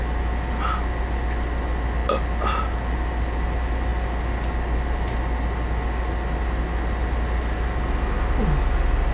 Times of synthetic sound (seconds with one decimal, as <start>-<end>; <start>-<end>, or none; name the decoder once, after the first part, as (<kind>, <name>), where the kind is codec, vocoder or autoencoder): none